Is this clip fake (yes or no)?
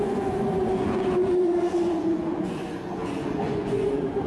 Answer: yes